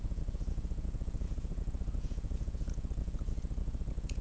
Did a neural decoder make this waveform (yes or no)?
yes